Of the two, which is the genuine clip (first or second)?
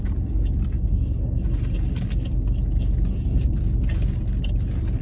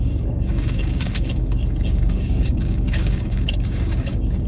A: first